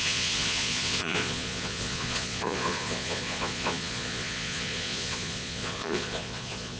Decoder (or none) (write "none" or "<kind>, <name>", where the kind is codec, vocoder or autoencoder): vocoder, Vocos